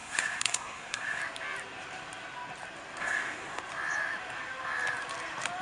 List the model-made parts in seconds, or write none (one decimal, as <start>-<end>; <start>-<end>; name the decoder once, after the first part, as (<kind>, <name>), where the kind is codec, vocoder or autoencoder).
0.0-1.2 (codec, SNAC); 3.0-3.6